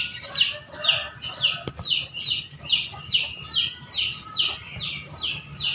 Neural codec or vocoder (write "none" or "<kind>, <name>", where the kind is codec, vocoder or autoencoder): none